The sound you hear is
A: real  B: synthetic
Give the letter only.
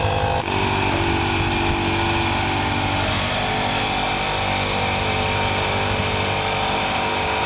A